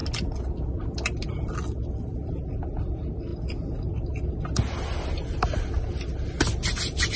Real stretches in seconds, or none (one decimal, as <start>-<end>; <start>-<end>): 0.0-7.2